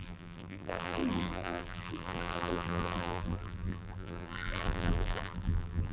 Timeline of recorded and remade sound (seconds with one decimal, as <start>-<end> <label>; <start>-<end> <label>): 0.0-5.9 remade